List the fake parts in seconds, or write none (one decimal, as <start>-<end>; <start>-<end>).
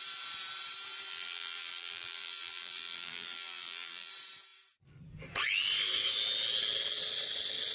1.1-4.1